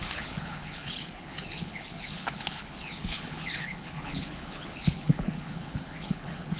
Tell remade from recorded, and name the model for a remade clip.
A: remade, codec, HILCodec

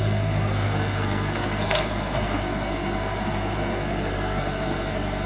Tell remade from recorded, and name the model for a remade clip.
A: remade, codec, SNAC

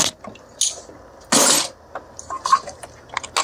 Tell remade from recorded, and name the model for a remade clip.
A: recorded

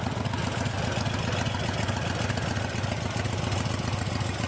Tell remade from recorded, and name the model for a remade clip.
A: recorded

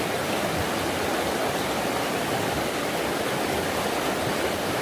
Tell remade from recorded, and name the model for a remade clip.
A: recorded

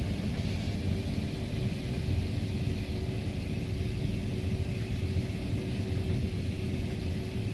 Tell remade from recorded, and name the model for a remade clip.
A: recorded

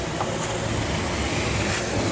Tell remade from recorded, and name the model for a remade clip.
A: recorded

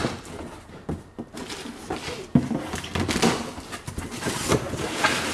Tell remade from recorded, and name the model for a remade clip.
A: recorded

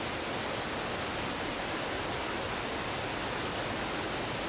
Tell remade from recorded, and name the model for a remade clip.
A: recorded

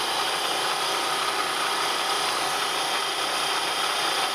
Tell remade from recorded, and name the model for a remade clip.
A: recorded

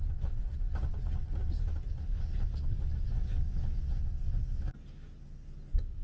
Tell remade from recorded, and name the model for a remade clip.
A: recorded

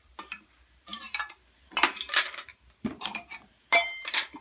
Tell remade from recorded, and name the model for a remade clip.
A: remade, vocoder, BigVGAN v2